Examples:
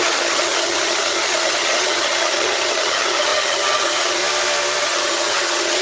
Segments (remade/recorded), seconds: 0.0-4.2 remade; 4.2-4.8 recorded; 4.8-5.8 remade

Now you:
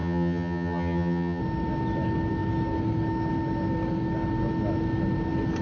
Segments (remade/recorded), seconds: 0.0-1.4 remade; 1.4-5.6 recorded

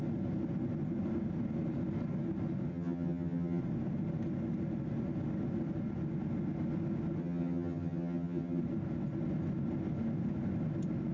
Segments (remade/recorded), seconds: 0.0-2.7 recorded; 2.7-3.6 remade; 3.6-7.2 recorded; 7.2-8.6 remade; 8.6-11.1 recorded

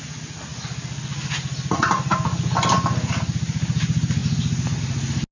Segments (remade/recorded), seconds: 0.0-5.3 recorded

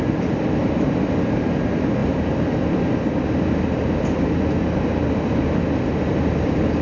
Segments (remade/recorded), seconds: 0.0-6.8 recorded